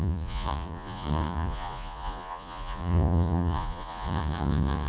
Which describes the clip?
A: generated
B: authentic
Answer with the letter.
A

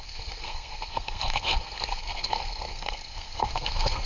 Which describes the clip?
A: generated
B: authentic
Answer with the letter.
A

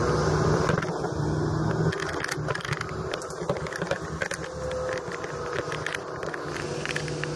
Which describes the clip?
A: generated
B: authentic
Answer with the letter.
B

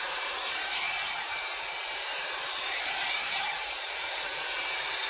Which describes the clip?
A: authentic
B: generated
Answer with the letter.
B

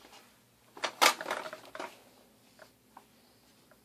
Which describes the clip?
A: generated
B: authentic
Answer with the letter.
B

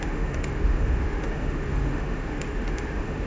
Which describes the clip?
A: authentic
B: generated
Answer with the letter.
B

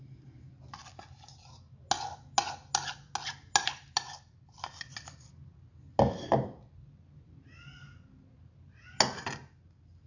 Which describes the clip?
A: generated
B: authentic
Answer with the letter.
B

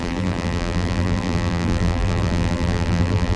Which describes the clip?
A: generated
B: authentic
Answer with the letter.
A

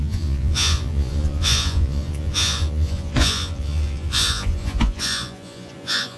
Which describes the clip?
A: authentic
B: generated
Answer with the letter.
B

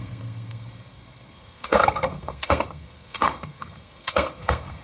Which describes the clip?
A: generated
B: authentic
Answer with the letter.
A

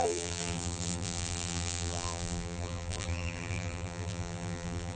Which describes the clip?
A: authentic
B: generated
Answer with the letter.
B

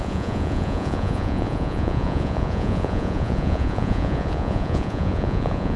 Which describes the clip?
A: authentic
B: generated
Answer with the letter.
B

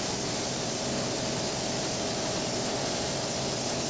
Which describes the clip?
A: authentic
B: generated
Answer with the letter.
A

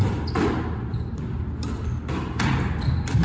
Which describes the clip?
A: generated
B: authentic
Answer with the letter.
B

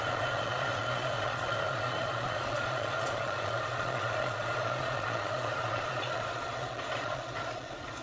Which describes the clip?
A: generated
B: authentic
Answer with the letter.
A